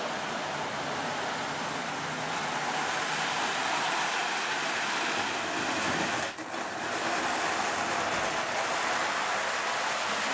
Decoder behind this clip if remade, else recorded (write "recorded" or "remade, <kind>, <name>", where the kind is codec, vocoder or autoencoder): recorded